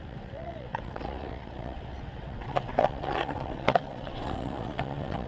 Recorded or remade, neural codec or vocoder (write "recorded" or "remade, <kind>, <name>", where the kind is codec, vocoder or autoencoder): remade, vocoder, WaveNeXt